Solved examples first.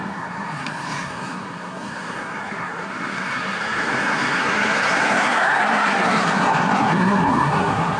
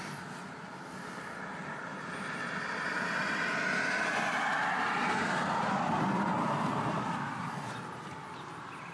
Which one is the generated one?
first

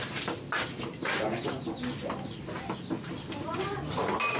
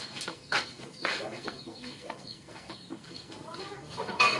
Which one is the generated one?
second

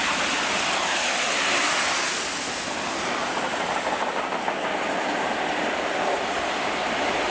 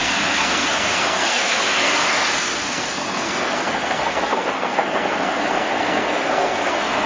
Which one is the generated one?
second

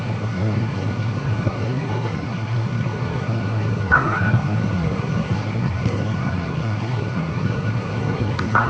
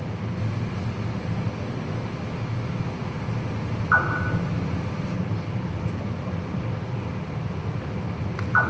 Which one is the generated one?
first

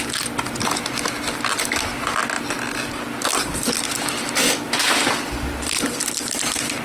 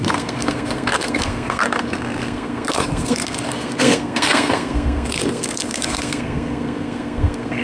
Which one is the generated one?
second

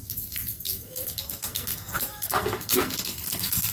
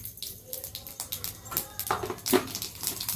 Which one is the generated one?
first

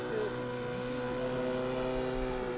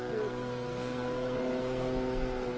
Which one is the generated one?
second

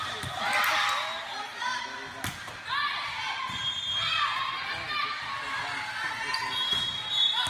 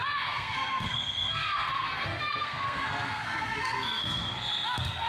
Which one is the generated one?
second